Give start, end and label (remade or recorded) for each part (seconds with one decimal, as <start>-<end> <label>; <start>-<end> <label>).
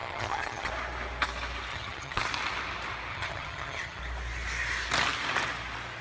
0.0-0.7 remade; 0.7-1.7 recorded; 1.7-2.2 remade; 2.2-3.1 recorded; 3.1-4.0 remade; 4.0-6.0 recorded